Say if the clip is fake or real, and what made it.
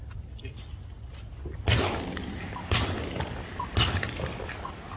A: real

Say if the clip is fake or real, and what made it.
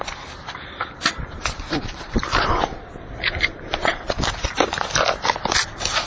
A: fake, vocoder, BigVGAN v2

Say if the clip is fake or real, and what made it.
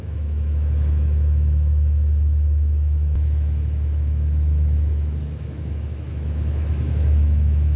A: fake, autoencoder, DAC-VAE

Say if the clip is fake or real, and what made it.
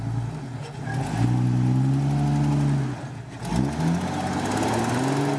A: real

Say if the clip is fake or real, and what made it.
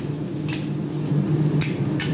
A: real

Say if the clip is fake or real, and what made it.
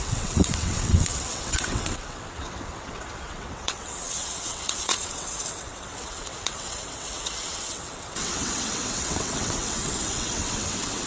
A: fake, vocoder, WaveNeXt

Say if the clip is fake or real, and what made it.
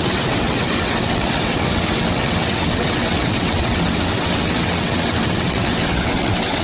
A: fake, vocoder, WaveNeXt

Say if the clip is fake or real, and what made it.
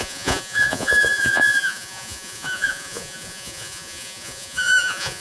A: fake, vocoder, Vocos